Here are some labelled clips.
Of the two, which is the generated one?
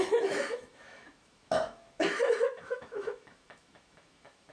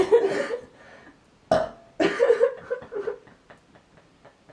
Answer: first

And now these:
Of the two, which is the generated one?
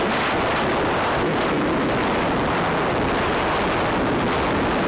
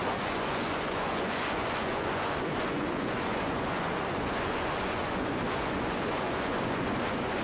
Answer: second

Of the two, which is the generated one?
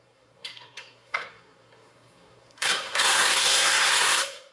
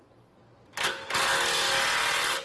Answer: first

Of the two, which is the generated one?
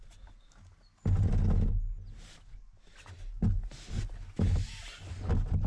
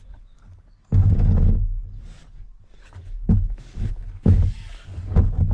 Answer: second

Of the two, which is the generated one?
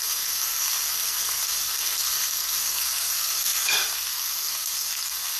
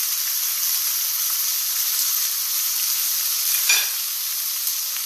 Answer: first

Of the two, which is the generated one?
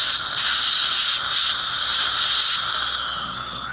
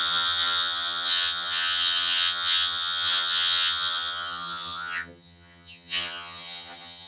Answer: second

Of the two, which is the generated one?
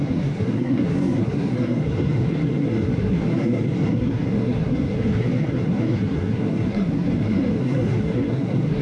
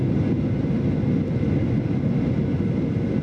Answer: first